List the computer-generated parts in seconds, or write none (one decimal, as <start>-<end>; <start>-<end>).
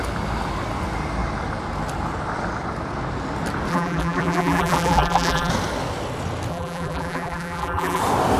3.7-5.5; 6.5-8.0